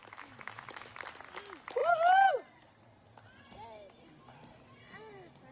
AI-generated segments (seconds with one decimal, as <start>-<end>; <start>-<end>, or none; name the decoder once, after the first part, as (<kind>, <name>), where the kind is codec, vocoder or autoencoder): 0.0-0.9 (autoencoder, DAC-VAE)